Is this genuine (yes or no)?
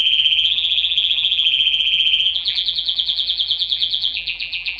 no